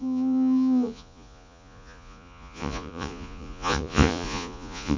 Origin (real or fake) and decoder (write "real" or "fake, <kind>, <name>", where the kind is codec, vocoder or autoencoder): fake, vocoder, Vocos